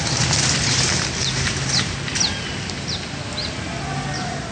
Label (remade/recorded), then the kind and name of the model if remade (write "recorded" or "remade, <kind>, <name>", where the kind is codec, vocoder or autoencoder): recorded